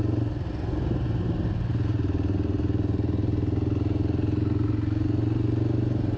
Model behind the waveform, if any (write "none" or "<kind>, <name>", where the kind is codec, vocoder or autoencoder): none